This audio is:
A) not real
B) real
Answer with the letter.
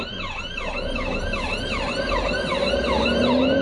B